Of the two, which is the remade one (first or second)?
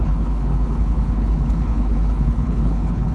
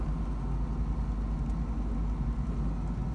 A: first